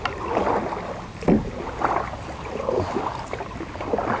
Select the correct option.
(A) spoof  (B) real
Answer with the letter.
B